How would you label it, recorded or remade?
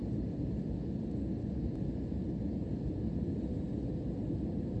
recorded